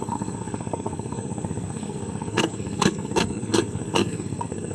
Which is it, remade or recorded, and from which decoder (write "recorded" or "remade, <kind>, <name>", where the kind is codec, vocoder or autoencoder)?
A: remade, codec, SNAC